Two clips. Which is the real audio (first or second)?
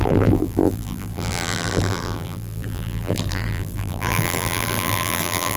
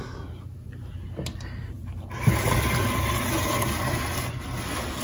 second